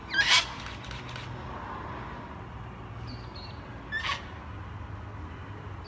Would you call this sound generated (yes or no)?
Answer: no